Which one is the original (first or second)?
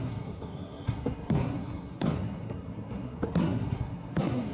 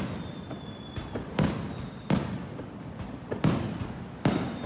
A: second